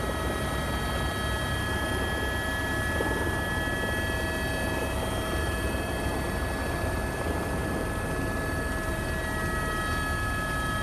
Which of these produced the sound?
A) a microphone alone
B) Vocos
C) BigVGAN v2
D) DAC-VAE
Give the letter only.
A